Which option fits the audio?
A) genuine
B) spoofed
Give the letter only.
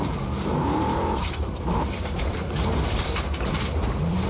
B